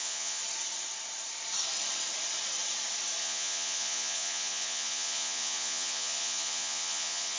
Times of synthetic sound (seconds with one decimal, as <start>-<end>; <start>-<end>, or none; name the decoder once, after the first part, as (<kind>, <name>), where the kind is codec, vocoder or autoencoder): 0.0-0.4 (vocoder, Vocos); 3.2-7.4